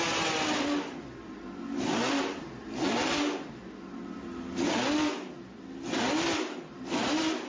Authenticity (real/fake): real